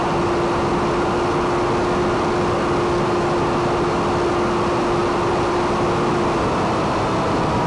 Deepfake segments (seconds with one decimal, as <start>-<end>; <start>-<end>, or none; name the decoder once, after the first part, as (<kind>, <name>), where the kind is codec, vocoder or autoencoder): none